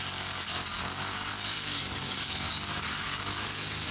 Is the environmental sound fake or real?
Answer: fake